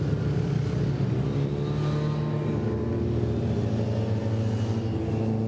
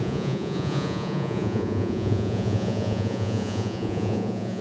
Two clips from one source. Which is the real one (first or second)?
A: first